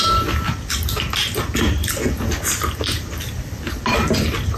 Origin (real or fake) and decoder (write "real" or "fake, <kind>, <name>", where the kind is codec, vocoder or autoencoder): real